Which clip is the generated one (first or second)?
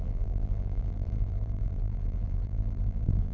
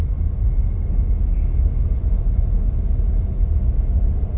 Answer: first